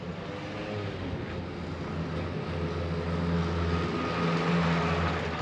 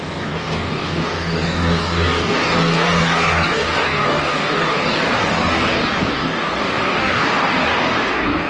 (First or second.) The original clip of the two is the first